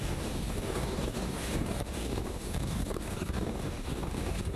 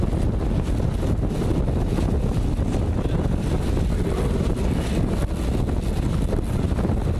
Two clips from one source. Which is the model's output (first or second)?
first